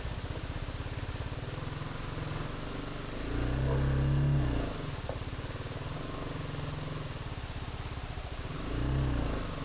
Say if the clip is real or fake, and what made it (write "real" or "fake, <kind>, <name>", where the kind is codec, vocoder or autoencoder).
real